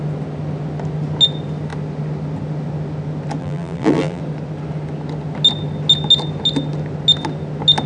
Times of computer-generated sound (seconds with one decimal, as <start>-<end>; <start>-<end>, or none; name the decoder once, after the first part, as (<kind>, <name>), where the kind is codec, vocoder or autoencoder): 3.4-4.2 (vocoder, BigVGAN v2)